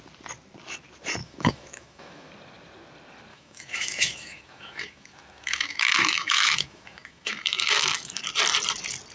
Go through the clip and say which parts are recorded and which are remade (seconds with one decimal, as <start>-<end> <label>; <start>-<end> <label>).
0.0-1.2 recorded; 1.2-2.3 remade; 2.3-3.3 recorded; 3.3-8.2 remade; 8.2-9.1 recorded